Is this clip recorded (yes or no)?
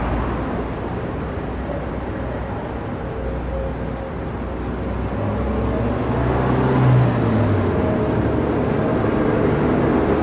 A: yes